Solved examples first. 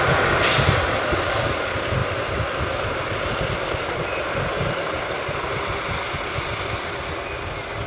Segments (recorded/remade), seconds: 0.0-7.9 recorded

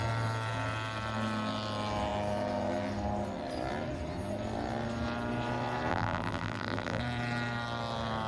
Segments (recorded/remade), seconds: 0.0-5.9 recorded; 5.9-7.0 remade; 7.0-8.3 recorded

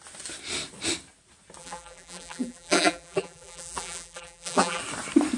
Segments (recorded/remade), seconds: 0.0-1.6 recorded; 1.6-4.8 remade; 4.8-5.4 recorded